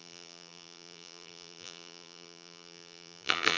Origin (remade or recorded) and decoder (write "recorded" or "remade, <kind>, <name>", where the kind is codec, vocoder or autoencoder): remade, vocoder, BigVGAN v2